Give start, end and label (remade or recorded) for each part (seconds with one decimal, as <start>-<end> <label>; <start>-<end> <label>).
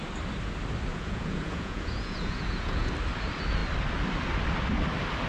0.0-0.9 recorded; 0.9-2.9 remade; 2.9-5.3 recorded